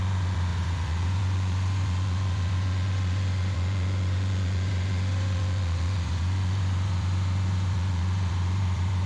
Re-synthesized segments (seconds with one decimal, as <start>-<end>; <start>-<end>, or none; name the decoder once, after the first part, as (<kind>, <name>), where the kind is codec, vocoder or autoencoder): 0.0-9.1 (vocoder, Vocos)